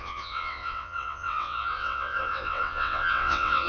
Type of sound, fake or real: fake